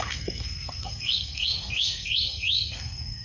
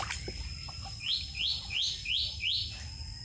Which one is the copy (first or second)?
first